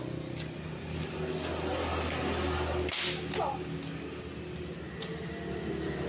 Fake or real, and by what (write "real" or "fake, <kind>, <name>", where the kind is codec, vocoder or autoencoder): real